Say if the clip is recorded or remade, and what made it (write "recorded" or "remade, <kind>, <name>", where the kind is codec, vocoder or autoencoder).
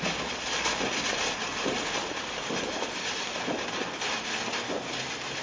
recorded